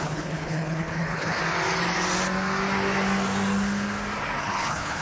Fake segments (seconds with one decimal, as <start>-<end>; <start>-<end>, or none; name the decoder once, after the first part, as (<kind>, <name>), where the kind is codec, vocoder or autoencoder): 0.0-1.4 (codec, HILCodec); 4.4-5.0